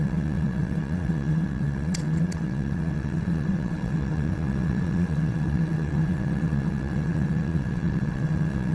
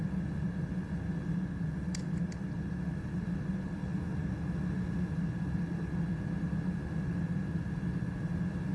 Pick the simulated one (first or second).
first